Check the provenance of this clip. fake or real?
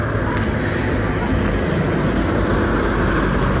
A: real